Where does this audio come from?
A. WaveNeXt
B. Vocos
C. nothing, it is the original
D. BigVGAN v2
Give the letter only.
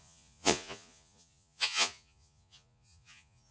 B